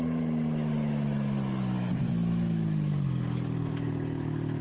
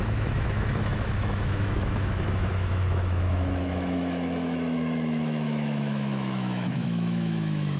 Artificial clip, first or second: second